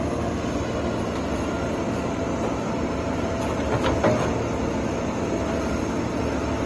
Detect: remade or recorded recorded